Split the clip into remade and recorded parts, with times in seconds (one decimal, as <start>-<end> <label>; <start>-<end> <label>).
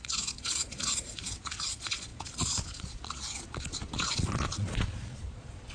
0.0-5.7 remade